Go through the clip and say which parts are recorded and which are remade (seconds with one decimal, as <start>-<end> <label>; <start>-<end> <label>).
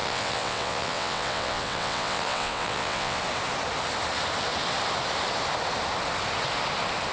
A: 0.0-3.2 remade; 3.2-7.1 recorded